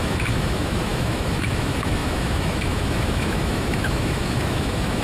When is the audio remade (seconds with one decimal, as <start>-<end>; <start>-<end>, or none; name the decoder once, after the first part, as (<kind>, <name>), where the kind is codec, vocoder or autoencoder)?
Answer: 0.0-5.0 (autoencoder, DAC-VAE)